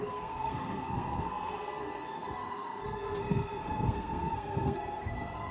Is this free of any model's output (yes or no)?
no